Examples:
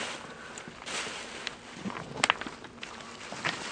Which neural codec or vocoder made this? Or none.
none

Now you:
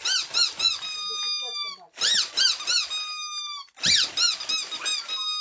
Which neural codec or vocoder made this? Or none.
none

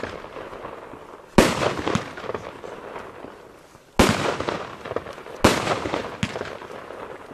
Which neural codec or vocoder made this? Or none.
none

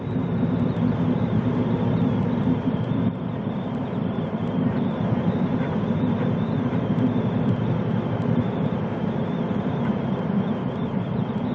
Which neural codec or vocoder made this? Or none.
none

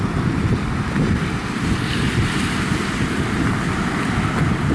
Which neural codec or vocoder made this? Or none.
none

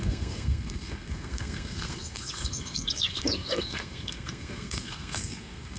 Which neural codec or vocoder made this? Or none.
codec, SNAC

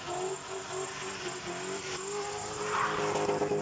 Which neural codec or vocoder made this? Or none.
none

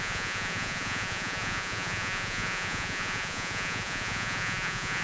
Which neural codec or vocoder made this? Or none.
vocoder, Vocos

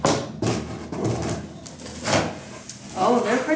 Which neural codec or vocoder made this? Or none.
none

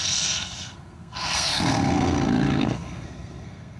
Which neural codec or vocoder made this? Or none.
codec, SNAC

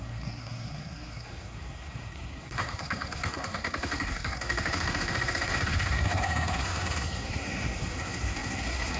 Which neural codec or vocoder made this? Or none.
codec, SNAC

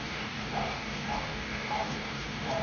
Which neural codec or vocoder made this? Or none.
codec, DAC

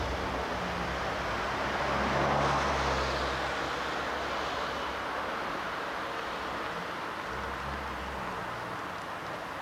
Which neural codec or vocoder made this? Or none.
none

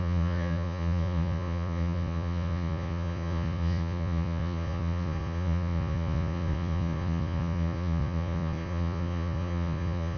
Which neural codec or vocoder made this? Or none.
vocoder, Vocos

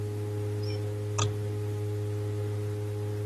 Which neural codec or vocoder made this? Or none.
none